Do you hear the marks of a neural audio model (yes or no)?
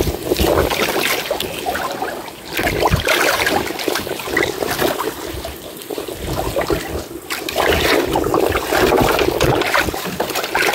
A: no